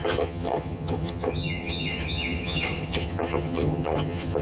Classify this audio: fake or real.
fake